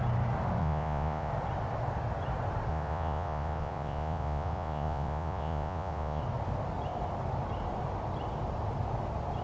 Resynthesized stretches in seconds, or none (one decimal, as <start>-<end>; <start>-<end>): 0.6-1.3; 2.7-6.2

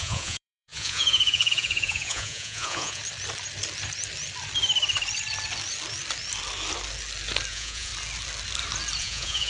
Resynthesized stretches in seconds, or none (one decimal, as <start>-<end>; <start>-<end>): 0.0-3.0; 7.5-7.9; 9.0-9.5

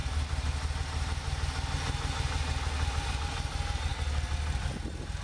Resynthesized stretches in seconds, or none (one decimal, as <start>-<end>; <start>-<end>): none

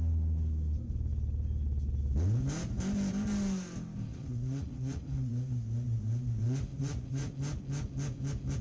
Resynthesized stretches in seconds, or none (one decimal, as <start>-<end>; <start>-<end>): 4.1-5.3; 6.7-7.3

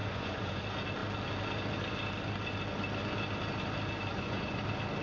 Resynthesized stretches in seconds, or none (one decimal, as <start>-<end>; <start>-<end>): 0.0-0.6; 4.1-4.6

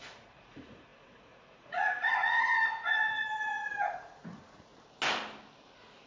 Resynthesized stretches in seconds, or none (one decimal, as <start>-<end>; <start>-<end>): 0.0-4.7

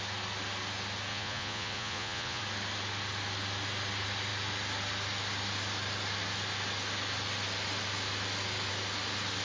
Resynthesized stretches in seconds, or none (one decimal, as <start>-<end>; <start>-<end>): 1.1-2.4